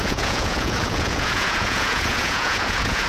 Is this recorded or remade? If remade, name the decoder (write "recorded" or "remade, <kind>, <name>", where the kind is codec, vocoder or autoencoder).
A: remade, vocoder, Vocos